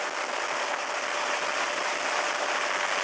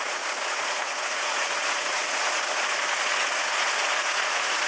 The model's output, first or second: second